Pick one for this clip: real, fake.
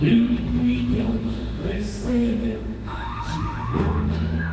fake